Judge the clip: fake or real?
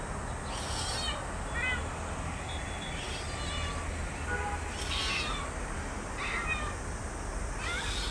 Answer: real